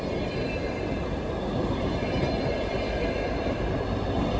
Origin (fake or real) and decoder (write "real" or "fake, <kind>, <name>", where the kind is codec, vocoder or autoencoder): real